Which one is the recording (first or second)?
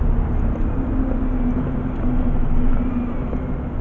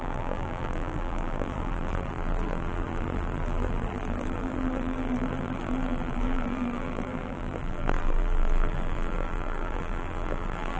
first